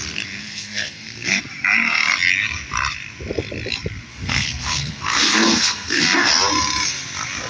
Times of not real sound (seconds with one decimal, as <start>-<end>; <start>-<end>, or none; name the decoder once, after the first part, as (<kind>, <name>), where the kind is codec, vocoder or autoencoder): 0.4-1.4 (codec, SNAC); 4.1-6.3